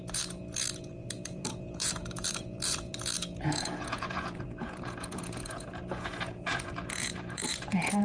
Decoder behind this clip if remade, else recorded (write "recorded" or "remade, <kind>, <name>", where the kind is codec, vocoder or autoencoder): remade, vocoder, Vocos